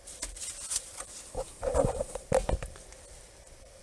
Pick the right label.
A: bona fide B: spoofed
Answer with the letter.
B